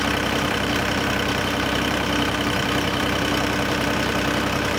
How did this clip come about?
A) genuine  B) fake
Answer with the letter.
B